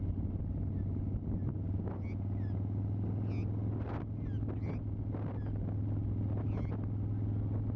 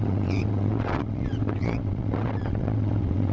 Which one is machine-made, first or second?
second